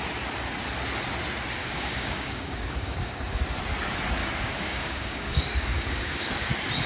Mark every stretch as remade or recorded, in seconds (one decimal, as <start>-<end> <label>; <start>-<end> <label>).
0.0-1.6 recorded; 1.6-3.4 remade; 3.4-4.2 recorded; 4.2-6.5 remade; 6.5-6.9 recorded